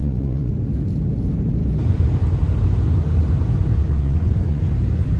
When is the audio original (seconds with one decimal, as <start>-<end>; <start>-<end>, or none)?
0.5-3.8; 4.6-5.2